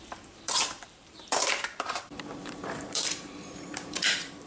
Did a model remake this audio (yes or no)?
yes